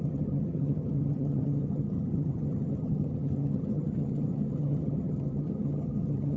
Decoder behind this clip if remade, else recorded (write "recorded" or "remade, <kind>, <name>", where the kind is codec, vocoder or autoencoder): remade, vocoder, HiFi-GAN